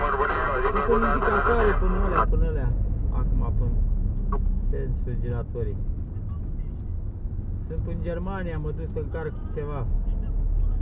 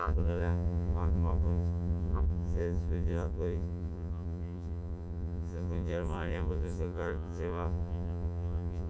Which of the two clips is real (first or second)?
first